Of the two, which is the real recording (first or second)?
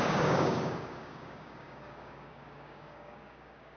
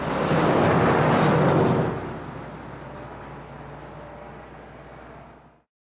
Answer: second